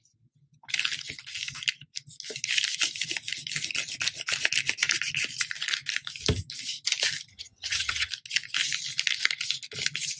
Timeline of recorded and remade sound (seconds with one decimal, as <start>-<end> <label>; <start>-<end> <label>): 0.0-7.3 recorded; 7.3-8.1 remade; 8.1-10.2 recorded